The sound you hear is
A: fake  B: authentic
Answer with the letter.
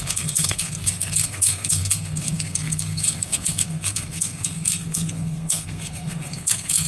A